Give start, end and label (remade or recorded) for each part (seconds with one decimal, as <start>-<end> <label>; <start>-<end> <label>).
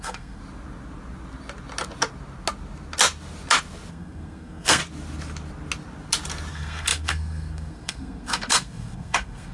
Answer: 0.0-0.4 remade; 0.4-3.9 recorded; 3.9-4.8 remade; 4.8-6.5 recorded; 6.5-9.5 remade